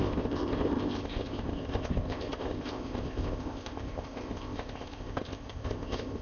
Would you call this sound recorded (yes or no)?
no